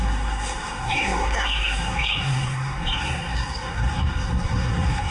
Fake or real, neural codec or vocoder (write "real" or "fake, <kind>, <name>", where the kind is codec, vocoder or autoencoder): fake, codec, SNAC